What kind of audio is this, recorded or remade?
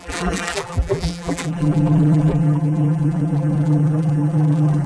remade